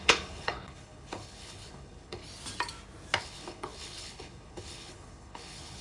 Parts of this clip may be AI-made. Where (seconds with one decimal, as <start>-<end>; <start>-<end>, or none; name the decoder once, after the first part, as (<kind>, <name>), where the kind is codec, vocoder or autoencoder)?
0.0-2.2 (codec, HILCodec); 3.2-5.8